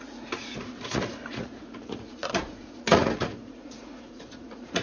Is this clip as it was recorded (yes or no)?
no